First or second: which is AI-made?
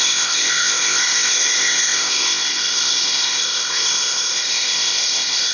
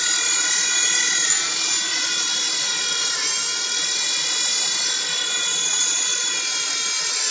first